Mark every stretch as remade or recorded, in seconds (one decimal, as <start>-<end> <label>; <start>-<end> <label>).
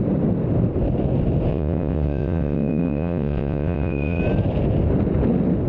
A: 0.0-1.5 recorded; 1.5-4.2 remade; 4.2-5.7 recorded